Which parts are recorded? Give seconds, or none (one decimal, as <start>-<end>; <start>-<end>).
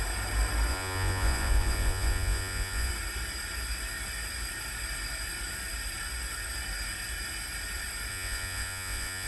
0.0-0.7; 2.9-8.1